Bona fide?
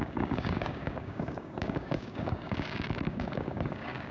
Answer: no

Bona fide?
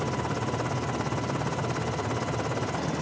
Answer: yes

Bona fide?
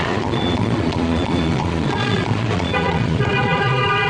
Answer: no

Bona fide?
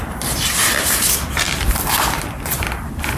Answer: no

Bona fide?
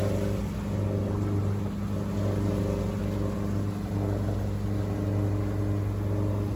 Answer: yes